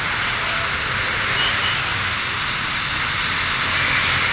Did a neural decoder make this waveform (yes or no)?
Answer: no